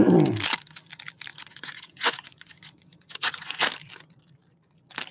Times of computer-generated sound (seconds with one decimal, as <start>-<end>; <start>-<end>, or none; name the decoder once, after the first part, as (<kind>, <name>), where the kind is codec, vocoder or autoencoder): 1.3-3.6 (vocoder, Vocos)